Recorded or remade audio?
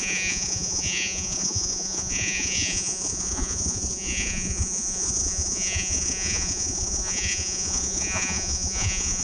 remade